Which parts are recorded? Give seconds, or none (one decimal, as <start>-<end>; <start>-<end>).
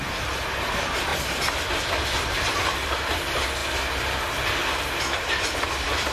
0.0-3.6; 4.2-6.1